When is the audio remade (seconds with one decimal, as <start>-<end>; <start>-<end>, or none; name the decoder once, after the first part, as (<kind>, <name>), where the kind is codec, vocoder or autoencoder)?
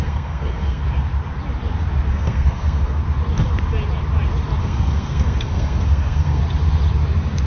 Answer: 0.0-0.8 (codec, SNAC); 2.1-3.0; 4.6-6.4